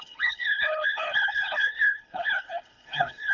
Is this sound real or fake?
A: fake